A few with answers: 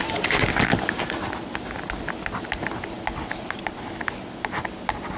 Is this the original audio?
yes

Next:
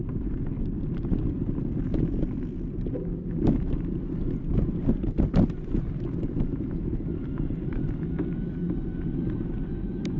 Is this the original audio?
yes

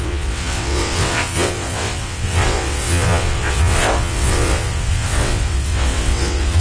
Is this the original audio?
no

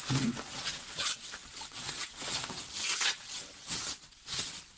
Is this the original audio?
no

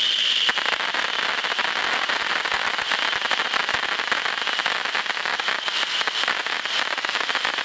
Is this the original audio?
yes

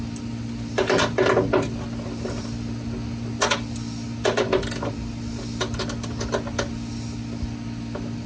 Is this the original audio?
yes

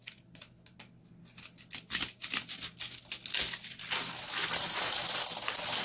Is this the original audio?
yes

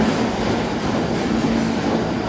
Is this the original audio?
yes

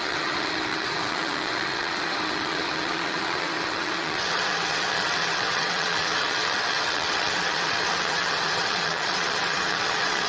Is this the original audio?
no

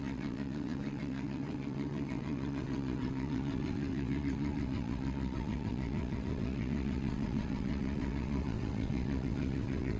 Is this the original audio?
no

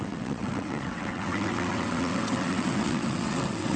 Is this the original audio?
no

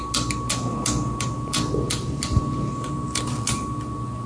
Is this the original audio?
yes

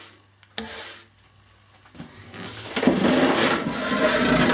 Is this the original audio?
yes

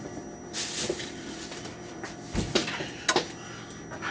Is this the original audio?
yes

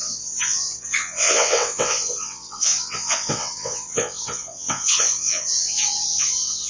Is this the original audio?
no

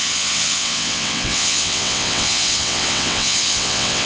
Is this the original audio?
no